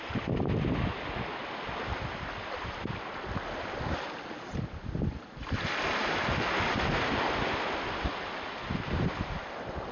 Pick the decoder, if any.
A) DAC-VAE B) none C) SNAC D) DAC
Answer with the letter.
B